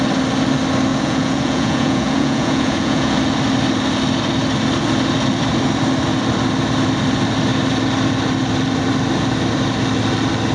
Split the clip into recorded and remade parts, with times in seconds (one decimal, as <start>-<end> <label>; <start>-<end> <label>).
0.0-0.9 recorded; 0.9-3.1 remade; 3.1-10.5 recorded